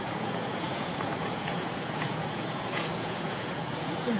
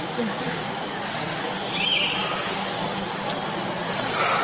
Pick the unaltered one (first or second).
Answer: second